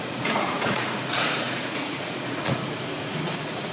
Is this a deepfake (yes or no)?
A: yes